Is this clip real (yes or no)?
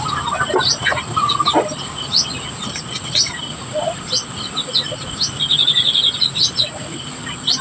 yes